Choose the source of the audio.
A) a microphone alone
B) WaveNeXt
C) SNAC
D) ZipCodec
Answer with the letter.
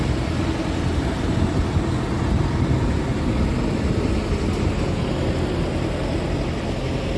A